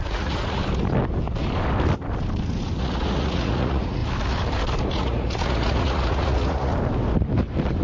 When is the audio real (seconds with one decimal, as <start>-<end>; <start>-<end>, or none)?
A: 0.6-2.8; 4.0-4.8; 6.7-7.8

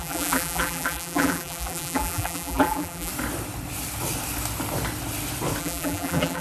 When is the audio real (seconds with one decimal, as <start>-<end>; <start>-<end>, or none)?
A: 3.1-5.6